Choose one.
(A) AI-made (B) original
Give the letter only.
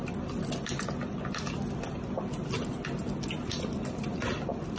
B